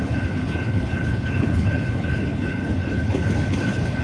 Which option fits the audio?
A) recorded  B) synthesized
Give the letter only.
B